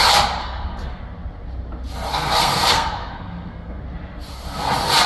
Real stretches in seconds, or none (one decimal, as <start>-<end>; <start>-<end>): 0.0-0.4; 1.0-2.1; 3.8-5.1